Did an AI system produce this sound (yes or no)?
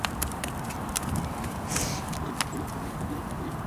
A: no